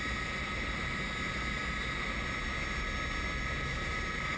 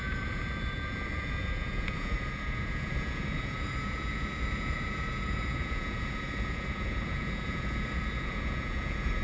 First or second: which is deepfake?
second